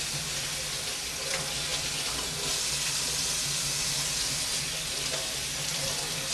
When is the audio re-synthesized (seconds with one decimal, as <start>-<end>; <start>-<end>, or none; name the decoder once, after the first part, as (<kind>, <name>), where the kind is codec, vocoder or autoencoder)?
none